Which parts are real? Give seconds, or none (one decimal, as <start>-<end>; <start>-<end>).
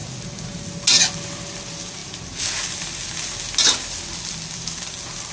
0.0-5.3